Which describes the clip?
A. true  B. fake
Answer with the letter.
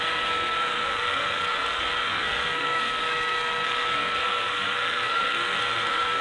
B